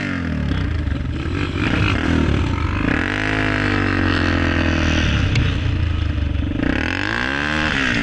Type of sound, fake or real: real